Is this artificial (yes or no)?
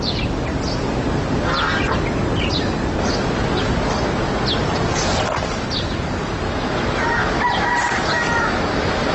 no